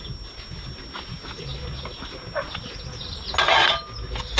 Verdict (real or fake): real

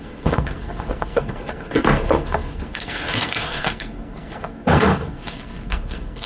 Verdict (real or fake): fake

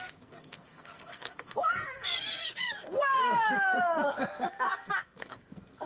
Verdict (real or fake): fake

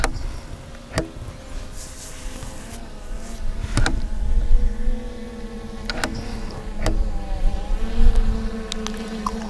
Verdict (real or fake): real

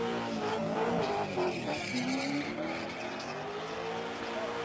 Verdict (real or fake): real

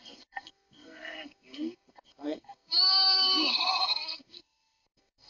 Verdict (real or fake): fake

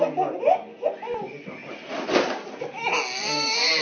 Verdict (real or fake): real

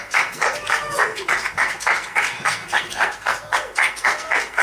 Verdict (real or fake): fake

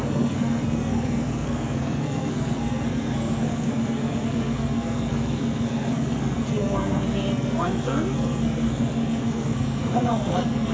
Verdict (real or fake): fake